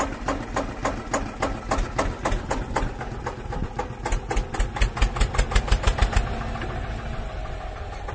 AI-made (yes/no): no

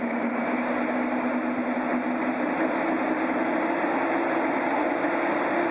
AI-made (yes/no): no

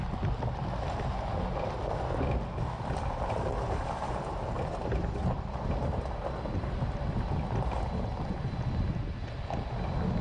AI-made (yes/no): no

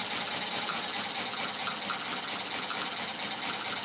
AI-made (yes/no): no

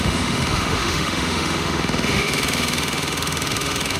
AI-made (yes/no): yes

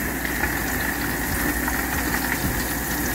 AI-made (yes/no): no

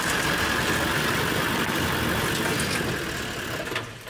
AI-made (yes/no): no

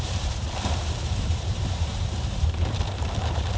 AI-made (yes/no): yes